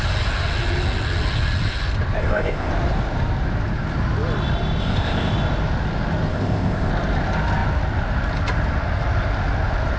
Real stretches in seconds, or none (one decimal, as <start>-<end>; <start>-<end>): 0.0-2.2; 2.7-4.8; 5.3-6.3; 6.9-10.0